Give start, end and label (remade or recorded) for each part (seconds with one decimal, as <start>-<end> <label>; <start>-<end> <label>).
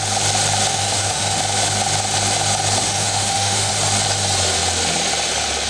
0.0-0.7 recorded; 0.7-1.4 remade; 1.4-2.8 recorded; 2.8-3.7 remade; 3.7-5.7 recorded